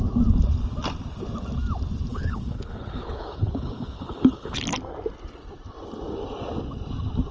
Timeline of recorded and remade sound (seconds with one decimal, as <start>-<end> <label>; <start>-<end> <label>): 0.0-2.1 recorded; 2.1-4.6 remade; 4.6-7.3 recorded